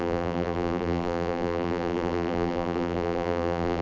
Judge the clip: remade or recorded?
remade